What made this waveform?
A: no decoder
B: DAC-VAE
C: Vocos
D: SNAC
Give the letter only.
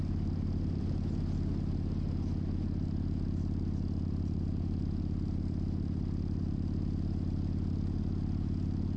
A